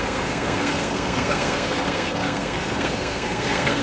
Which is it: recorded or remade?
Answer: remade